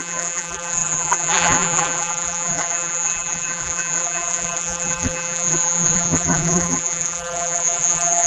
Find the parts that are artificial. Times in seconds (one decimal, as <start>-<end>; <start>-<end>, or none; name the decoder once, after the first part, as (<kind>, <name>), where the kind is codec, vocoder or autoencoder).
0.0-8.3 (vocoder, BigVGAN v2)